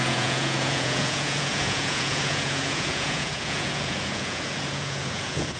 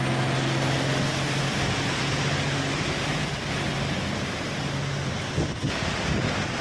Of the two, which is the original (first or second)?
second